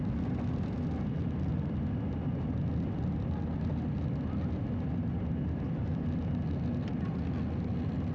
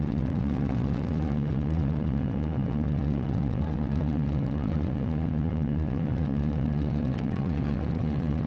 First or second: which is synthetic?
second